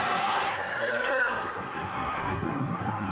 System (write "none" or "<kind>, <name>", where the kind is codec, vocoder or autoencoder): codec, SNAC